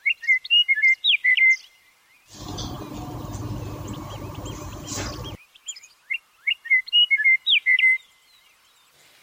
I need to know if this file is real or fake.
real